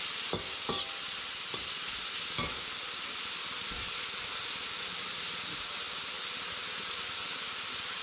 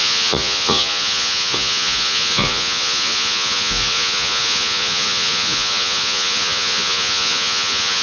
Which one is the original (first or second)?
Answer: first